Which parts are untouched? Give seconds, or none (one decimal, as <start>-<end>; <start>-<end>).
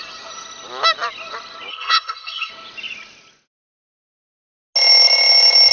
0.0-1.7; 2.5-5.7